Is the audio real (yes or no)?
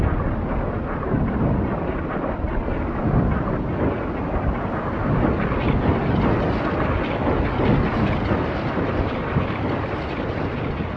yes